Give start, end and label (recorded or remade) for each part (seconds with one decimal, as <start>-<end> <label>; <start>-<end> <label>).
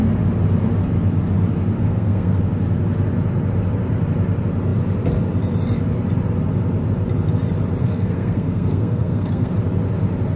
0.0-1.8 recorded; 1.8-2.4 remade; 2.4-7.8 recorded; 7.8-9.5 remade; 9.5-10.4 recorded